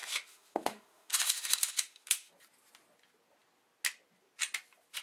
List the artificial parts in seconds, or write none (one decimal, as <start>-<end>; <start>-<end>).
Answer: 0.0-2.3